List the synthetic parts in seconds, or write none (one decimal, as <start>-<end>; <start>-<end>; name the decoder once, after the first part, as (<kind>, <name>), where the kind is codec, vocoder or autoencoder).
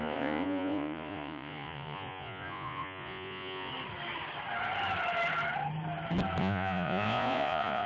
0.0-3.7 (vocoder, Vocos); 6.4-7.9